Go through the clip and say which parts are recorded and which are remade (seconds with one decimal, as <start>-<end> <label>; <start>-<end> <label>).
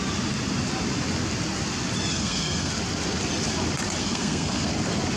0.0-2.1 recorded; 2.1-2.7 remade; 2.7-4.0 recorded; 4.0-4.7 remade; 4.7-5.2 recorded